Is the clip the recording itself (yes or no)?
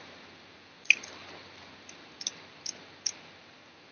yes